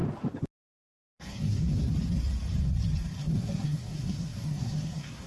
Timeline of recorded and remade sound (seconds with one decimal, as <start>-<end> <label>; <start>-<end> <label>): 0.0-0.6 recorded; 0.6-1.9 remade; 1.9-3.2 recorded; 3.2-5.3 remade